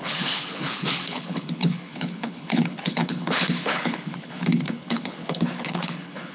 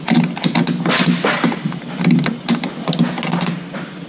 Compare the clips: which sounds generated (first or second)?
first